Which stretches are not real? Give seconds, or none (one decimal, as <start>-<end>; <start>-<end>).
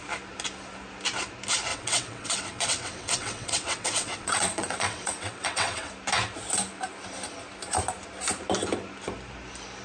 1.7-5.9